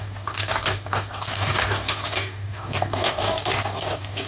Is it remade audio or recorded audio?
remade